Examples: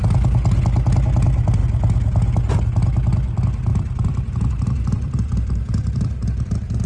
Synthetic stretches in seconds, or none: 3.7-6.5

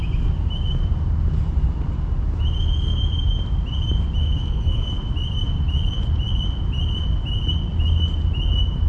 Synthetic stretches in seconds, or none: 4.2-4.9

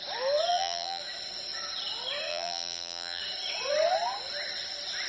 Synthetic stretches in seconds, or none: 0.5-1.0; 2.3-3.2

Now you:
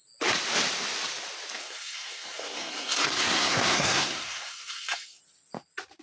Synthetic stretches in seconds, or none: 1.6-5.2

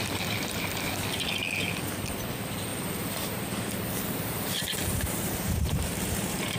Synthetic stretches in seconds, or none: 2.7-6.6